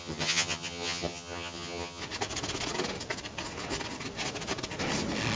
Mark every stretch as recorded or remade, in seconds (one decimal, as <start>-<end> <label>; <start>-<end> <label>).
0.0-2.0 remade; 2.0-5.4 recorded